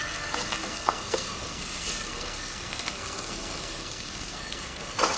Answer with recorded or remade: remade